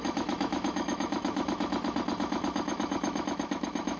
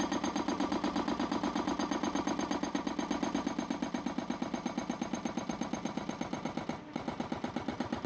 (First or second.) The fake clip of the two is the first